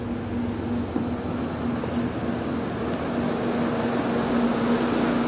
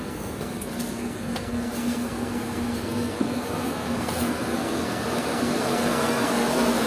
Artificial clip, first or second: second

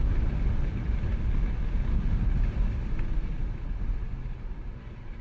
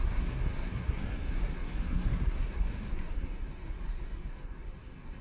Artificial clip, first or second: second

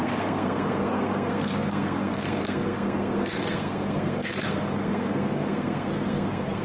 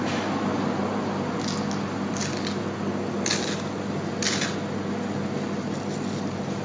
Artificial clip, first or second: first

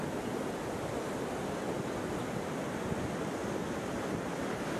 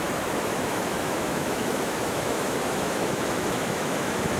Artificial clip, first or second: second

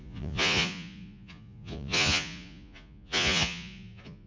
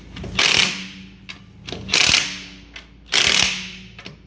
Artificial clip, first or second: first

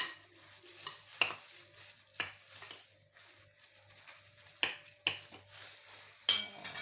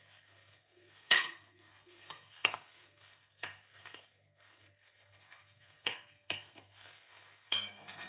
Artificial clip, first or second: second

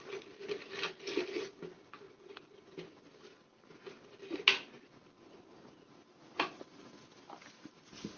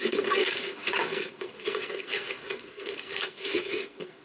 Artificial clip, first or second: second